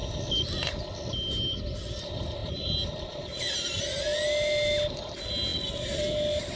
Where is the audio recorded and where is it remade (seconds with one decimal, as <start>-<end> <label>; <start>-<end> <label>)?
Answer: 0.0-2.4 recorded; 2.4-3.8 remade; 3.8-6.6 recorded